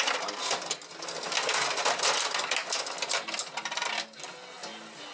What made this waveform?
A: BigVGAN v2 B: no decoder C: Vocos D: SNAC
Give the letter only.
B